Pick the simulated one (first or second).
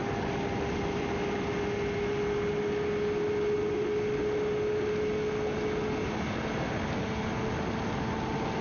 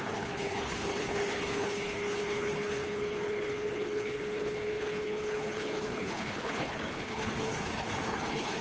second